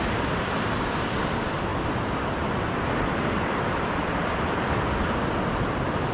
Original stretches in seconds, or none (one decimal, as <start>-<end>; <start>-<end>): 0.0-1.7; 4.3-6.1